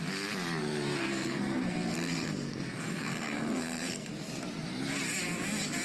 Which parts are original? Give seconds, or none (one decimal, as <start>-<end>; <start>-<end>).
0.0-0.6; 4.1-5.8